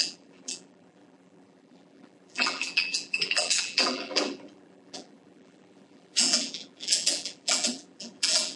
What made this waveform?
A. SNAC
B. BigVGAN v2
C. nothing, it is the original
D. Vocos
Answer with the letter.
B